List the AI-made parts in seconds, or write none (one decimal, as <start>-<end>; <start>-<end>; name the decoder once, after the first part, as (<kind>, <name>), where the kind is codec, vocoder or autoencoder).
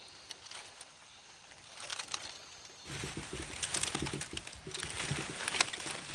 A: none